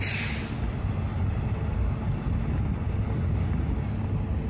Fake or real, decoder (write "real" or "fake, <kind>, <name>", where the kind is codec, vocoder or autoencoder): real